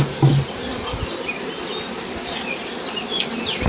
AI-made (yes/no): no